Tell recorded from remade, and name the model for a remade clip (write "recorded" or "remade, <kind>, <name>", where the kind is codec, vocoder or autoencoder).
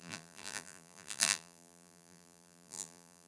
remade, vocoder, BigVGAN v2